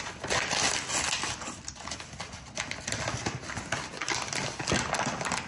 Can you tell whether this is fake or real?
real